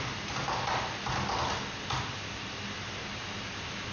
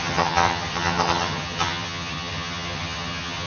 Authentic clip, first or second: first